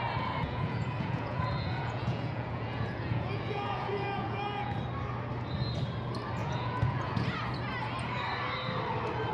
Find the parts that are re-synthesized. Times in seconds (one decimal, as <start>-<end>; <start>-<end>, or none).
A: 0.4-4.8; 6.4-7.7